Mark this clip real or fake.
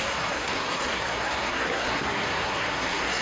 fake